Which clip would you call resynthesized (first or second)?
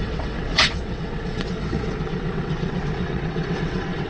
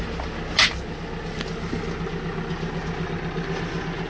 first